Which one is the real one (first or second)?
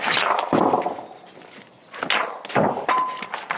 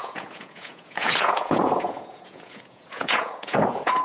first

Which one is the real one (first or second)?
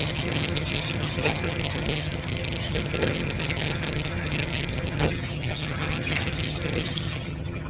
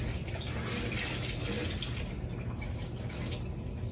second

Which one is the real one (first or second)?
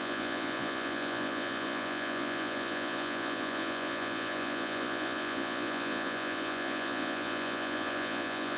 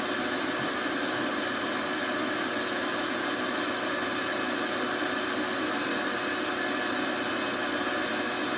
second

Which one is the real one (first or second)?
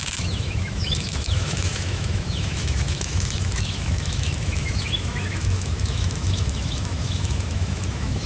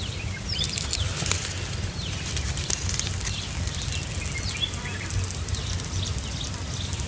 second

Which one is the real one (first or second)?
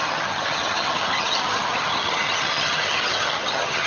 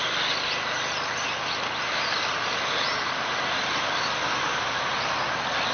second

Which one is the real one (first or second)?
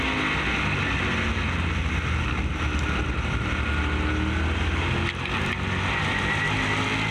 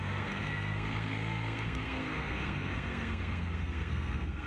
first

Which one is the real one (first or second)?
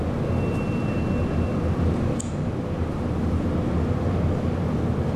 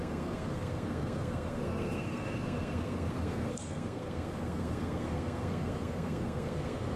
first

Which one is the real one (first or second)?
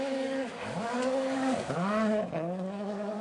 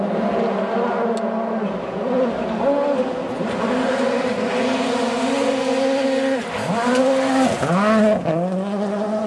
second